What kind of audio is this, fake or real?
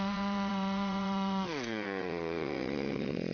fake